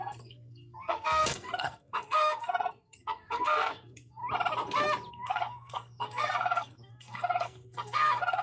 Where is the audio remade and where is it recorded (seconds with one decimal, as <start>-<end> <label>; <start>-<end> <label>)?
0.0-4.2 remade; 4.2-5.1 recorded; 5.1-8.4 remade